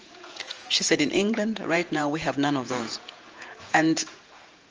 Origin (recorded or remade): remade